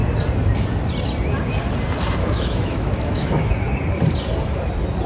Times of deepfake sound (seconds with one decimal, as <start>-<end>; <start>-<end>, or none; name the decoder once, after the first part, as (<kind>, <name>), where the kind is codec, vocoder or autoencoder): 2.2-3.5 (autoencoder, DAC-VAE)